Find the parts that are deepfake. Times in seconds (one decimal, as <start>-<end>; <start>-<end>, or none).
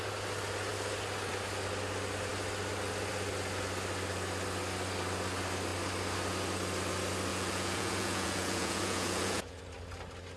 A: 7.3-9.6